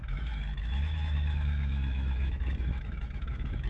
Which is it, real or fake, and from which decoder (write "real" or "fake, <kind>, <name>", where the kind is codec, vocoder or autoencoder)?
fake, autoencoder, DAC-VAE